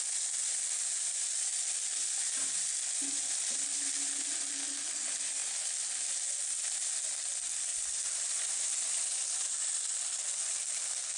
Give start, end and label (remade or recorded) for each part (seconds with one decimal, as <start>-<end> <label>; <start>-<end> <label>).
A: 0.0-7.7 recorded; 7.7-8.3 remade; 8.3-11.2 recorded